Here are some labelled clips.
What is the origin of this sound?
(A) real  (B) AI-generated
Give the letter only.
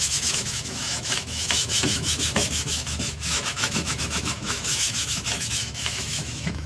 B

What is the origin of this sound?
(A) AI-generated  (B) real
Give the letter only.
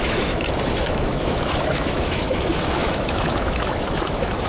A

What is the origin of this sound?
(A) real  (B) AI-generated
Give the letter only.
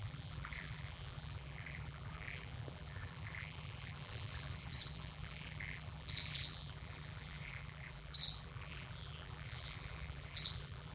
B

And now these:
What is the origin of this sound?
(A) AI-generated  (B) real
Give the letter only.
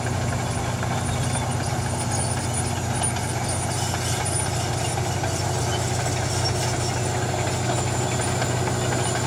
B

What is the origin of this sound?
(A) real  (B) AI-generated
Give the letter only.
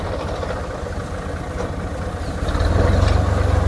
A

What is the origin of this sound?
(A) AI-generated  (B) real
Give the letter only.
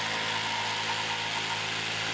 B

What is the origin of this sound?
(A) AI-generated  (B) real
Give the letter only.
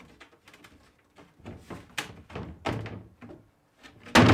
B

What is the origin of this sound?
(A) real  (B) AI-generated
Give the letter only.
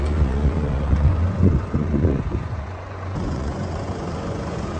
B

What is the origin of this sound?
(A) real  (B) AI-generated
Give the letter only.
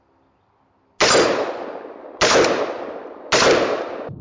A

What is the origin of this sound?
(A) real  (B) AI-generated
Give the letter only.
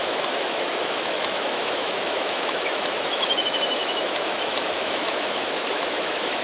B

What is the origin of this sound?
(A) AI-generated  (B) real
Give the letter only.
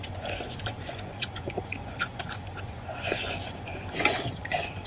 A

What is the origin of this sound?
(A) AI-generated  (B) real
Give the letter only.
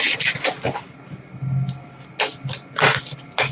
B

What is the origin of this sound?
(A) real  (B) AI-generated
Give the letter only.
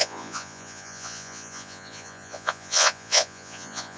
B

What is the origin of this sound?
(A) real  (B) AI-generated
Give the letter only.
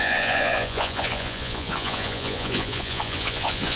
B